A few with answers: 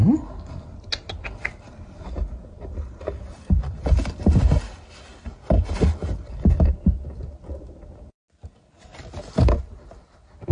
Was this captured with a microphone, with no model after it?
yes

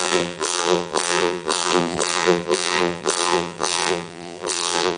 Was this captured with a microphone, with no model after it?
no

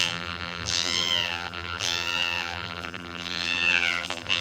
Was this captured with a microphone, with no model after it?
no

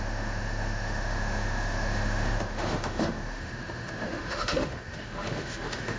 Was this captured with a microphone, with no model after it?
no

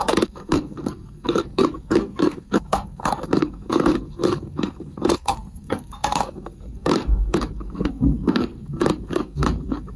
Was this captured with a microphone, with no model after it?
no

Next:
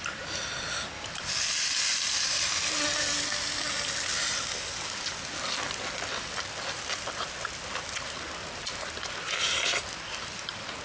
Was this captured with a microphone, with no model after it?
yes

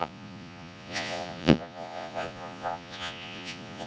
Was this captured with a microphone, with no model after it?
no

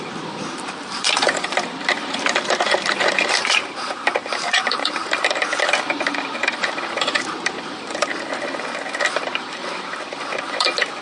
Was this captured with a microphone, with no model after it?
no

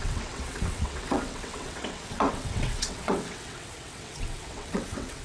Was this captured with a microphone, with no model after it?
no